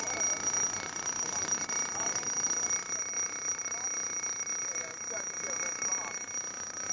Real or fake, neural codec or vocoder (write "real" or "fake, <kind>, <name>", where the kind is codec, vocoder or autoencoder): real